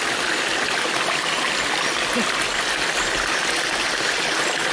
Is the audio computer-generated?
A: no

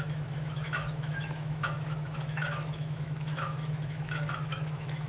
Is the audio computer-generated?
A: yes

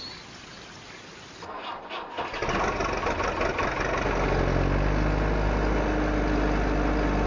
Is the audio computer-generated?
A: no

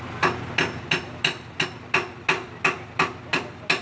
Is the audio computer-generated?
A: no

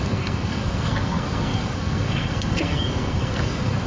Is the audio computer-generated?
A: yes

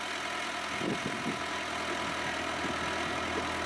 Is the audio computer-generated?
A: no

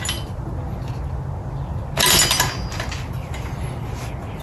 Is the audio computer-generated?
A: no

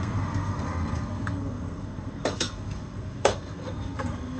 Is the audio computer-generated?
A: yes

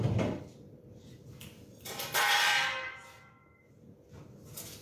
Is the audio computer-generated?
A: yes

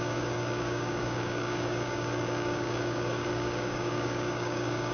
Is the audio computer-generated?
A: yes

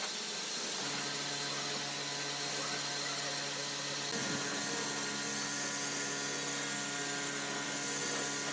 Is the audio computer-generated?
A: no